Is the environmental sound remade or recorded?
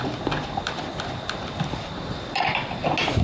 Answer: recorded